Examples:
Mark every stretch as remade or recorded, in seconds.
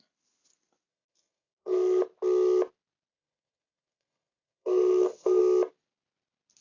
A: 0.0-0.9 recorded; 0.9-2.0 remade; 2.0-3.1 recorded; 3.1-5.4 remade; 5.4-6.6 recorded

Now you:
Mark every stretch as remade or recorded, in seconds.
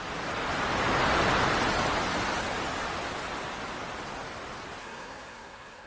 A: 0.0-4.8 recorded; 4.8-5.9 remade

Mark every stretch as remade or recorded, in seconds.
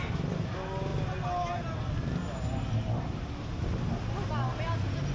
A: 0.0-5.1 recorded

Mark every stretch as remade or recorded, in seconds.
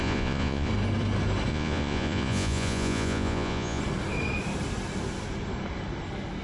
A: 0.0-0.7 remade; 0.7-1.5 recorded; 1.5-3.8 remade; 3.8-6.4 recorded